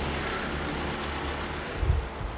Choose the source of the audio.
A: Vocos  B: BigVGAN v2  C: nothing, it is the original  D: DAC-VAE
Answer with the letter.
C